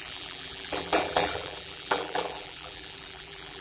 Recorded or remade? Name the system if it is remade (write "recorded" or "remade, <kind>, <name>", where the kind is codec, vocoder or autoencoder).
remade, vocoder, BigVGAN v2